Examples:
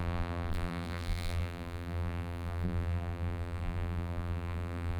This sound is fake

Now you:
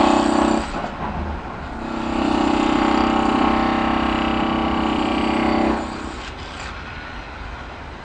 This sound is real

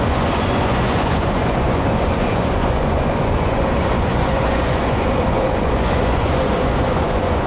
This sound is fake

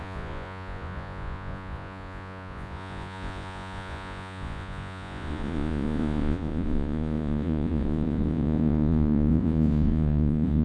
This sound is fake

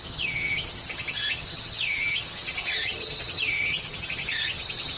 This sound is fake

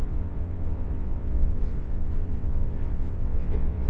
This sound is fake